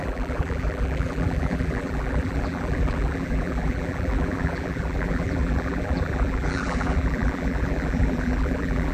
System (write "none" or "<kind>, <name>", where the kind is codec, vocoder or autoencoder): vocoder, BigVGAN v2